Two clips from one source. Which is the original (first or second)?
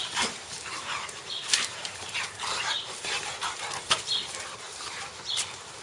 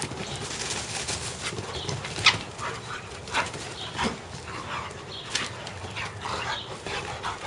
second